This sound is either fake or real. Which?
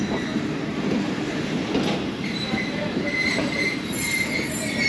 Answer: fake